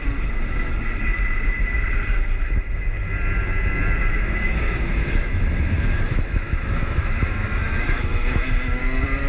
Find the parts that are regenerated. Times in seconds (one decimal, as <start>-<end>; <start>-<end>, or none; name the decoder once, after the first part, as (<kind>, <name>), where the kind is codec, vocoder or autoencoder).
4.1-8.8 (autoencoder, DAC-VAE)